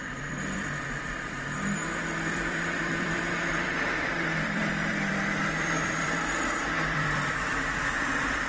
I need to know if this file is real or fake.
fake